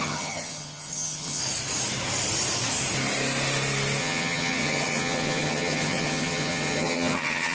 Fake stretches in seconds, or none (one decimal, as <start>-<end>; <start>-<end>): 0.0-1.4; 4.0-7.5